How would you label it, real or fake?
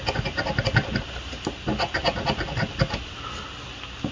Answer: real